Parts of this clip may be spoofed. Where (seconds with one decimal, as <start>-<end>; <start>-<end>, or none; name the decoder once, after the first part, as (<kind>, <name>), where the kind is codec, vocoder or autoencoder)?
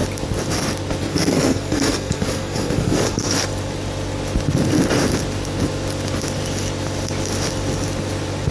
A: 1.0-3.5 (codec, SNAC)